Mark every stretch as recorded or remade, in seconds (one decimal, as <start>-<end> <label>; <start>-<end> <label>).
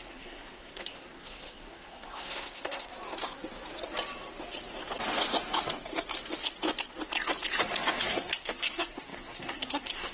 0.0-2.9 remade; 2.9-8.0 recorded; 8.0-10.1 remade